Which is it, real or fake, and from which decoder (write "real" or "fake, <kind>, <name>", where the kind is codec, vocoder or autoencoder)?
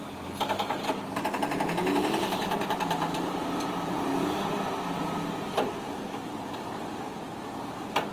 fake, vocoder, BigVGAN v2